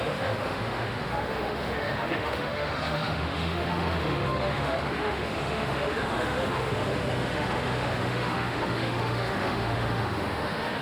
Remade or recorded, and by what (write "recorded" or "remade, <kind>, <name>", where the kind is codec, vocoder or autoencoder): remade, autoencoder, DAC-VAE